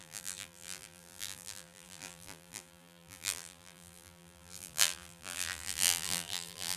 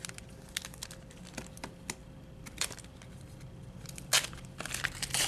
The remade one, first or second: first